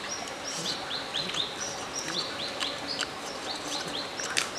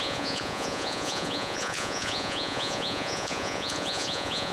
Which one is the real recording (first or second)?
first